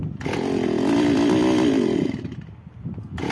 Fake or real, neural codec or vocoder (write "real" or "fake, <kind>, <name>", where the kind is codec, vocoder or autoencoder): real